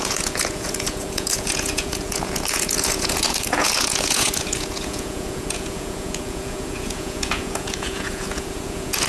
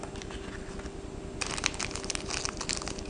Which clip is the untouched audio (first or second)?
second